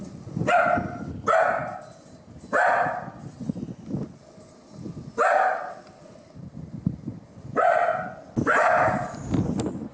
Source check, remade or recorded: recorded